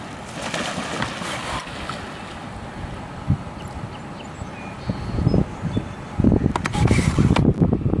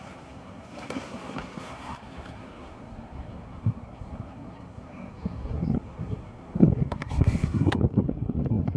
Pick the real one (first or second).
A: first